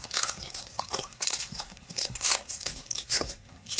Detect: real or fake fake